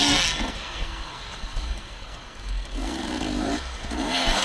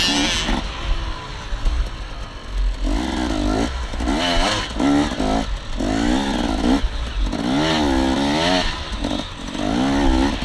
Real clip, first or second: second